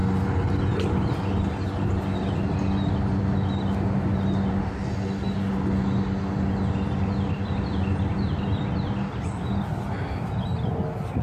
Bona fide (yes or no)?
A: yes